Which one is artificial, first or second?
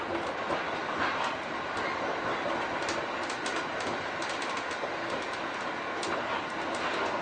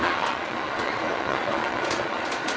second